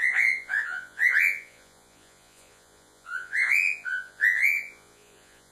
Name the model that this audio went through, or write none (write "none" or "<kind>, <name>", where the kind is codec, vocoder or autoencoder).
vocoder, Vocos